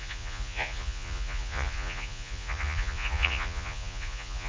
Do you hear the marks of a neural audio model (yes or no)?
yes